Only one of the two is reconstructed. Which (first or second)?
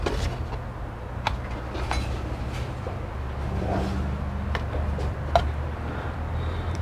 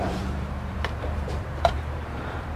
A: second